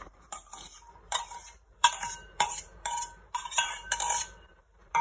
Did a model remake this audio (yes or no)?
yes